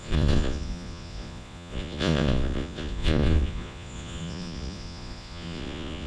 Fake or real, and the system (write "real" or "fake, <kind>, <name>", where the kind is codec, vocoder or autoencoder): fake, vocoder, Vocos